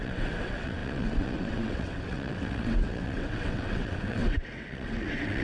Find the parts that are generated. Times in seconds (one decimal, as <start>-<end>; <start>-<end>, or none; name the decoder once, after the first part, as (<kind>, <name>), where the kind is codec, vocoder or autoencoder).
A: 0.0-5.4 (vocoder, WaveNeXt)